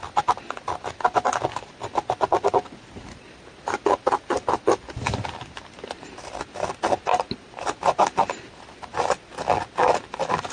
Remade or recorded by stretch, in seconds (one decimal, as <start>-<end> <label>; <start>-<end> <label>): 0.0-10.5 recorded